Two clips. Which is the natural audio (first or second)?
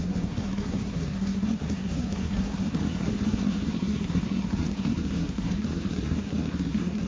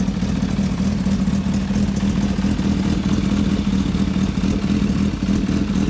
second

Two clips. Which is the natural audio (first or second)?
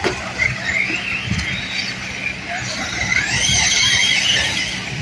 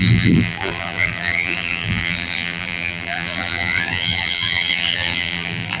first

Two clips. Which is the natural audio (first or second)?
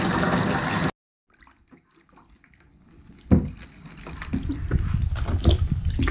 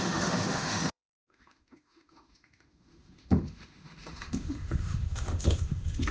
first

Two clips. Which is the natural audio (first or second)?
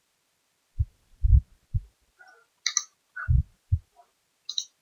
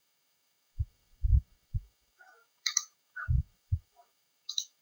first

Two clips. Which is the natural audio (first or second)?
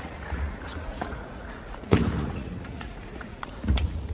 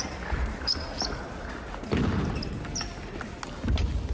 second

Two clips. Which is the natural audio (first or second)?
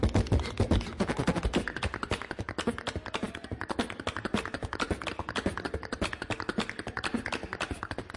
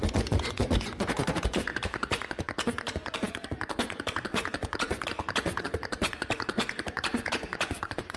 first